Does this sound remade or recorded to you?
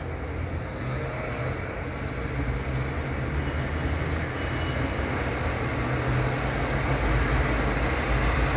recorded